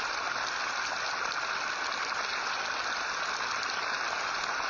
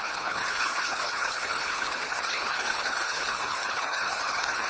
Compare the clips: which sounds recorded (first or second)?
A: first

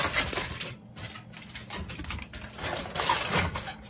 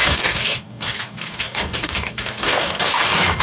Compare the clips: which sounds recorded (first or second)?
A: first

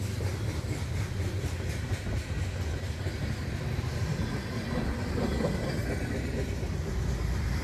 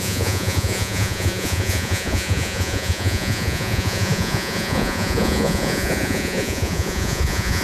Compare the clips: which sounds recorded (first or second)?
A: first